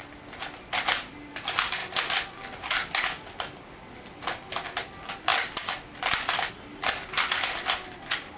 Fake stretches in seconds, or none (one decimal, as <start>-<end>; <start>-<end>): 5.3-6.5